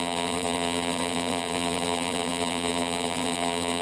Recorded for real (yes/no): no